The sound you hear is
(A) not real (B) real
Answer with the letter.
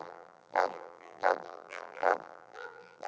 A